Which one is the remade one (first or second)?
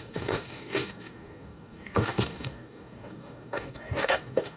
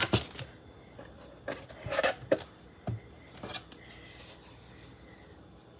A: first